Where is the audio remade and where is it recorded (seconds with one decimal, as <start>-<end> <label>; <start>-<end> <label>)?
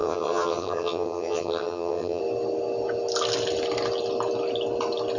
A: 0.0-2.2 remade; 2.2-5.2 recorded